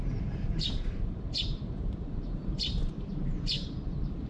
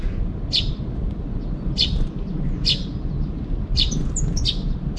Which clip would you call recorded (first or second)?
second